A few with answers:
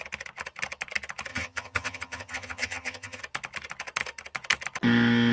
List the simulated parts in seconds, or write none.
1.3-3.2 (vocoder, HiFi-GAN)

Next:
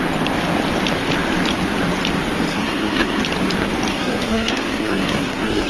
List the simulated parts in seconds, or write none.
2.5-3.2 (codec, SNAC); 3.9-5.7